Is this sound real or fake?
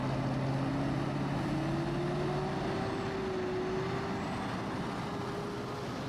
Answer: real